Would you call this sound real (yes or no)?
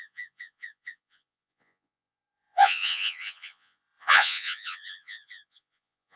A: no